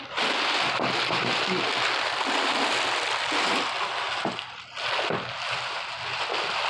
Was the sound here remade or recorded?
recorded